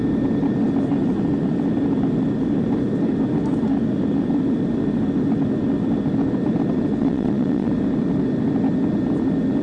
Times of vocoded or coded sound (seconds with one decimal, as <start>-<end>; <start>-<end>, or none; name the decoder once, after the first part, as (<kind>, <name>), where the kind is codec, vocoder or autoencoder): 7.0-7.7 (vocoder, Vocos)